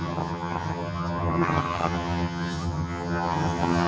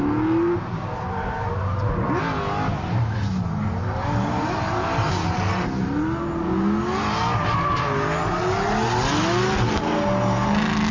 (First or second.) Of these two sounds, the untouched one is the second